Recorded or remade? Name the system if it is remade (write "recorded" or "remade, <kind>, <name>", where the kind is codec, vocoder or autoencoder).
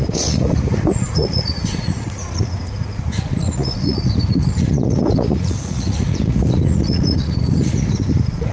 remade, vocoder, Vocos